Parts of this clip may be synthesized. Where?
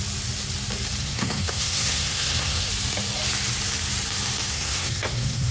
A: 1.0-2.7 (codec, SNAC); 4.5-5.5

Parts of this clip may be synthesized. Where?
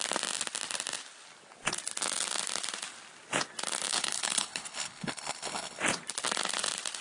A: 3.9-5.8 (codec, HILCodec)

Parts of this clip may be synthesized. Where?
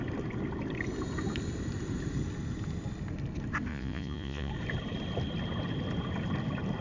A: 3.7-4.5 (vocoder, Vocos)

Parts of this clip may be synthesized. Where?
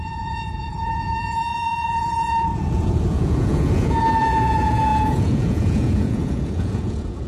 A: 0.0-7.3 (vocoder, Vocos)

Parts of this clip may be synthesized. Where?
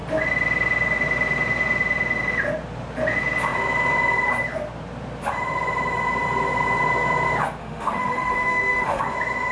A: 7.6-9.0 (autoencoder, DAC-VAE)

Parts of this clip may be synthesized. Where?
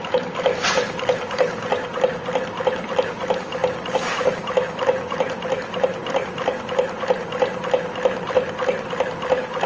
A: none